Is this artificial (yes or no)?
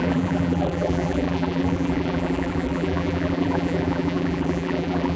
yes